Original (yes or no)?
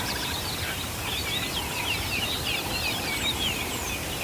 no